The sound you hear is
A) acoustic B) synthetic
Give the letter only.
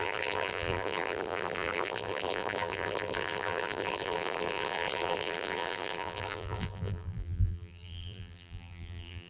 B